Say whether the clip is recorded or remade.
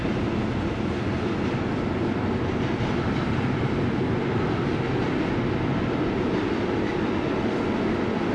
recorded